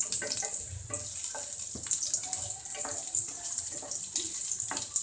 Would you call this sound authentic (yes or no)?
yes